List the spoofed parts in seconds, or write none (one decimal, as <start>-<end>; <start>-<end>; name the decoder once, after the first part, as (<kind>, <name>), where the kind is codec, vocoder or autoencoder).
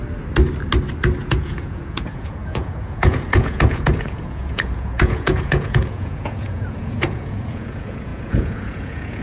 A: 1.2-9.2 (vocoder, Vocos)